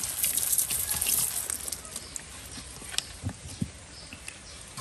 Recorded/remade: recorded